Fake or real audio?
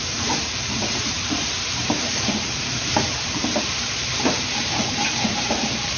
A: fake